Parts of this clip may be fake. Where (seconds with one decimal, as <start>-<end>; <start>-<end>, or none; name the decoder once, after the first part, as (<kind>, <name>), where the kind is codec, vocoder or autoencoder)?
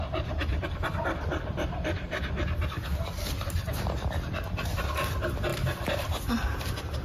0.5-4.7 (vocoder, BigVGAN v2); 5.5-6.3